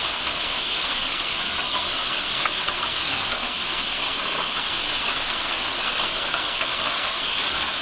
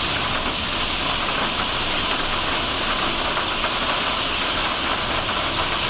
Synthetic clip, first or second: first